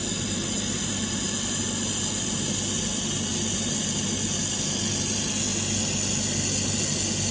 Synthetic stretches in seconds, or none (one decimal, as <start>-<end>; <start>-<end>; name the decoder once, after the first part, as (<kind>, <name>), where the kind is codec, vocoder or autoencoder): none